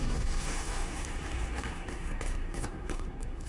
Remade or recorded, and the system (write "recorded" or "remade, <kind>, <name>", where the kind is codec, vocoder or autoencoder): remade, codec, SNAC